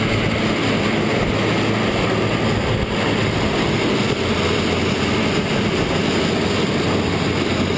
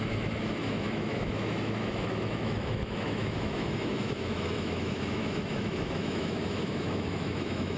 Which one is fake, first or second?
second